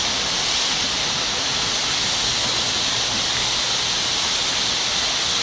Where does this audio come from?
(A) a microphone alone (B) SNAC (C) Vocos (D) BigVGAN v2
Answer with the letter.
A